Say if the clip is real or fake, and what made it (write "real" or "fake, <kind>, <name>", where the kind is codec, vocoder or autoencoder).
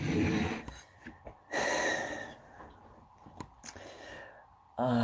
real